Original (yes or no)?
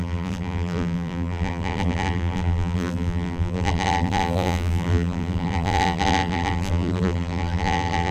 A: no